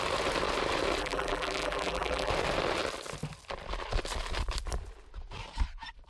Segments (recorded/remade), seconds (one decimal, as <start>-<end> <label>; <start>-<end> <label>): 0.0-1.0 recorded; 1.0-2.3 remade; 2.3-6.1 recorded